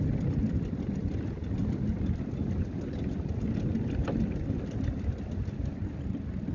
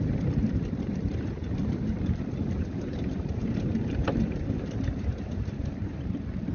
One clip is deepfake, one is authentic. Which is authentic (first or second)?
first